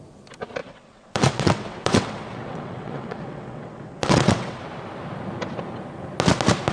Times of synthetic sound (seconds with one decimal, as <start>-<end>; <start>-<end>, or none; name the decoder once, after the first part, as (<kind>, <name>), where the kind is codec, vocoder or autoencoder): 0.6-4.6 (vocoder, WaveNeXt)